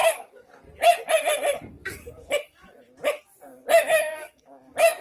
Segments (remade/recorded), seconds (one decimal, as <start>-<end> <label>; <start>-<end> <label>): 0.0-0.6 remade; 0.6-1.8 recorded; 1.8-2.8 remade; 2.8-3.5 recorded; 3.5-5.0 remade